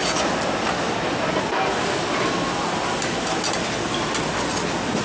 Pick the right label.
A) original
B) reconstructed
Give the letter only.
A